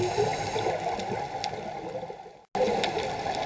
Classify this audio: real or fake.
real